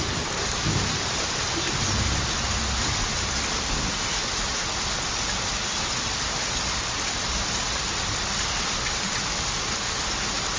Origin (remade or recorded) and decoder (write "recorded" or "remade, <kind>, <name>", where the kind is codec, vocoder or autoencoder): recorded